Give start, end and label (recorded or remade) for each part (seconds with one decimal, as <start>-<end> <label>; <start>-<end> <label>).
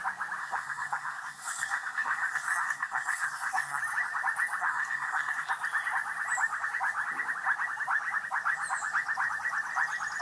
0.0-0.4 recorded; 0.4-3.8 remade; 3.8-4.6 recorded; 4.6-5.5 remade; 5.5-10.2 recorded